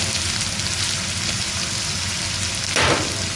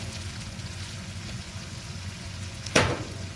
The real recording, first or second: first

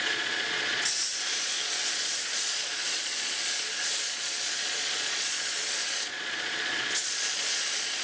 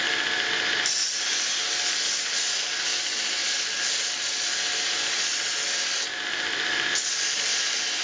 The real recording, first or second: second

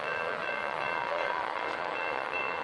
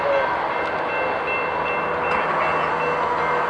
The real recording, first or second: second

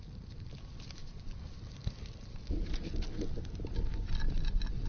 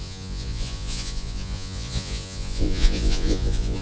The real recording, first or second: first